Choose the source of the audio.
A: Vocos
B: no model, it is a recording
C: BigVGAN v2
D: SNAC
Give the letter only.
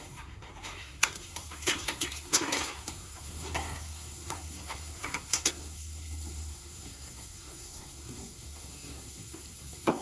D